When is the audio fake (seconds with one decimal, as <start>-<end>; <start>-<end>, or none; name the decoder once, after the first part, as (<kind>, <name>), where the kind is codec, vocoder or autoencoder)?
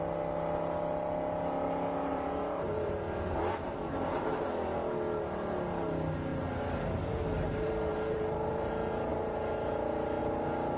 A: 2.1-2.9 (vocoder, BigVGAN v2); 7.9-8.7